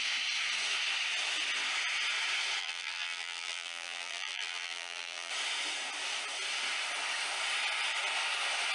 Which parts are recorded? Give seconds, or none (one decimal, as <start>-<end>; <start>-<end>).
0.0-2.6; 5.3-8.7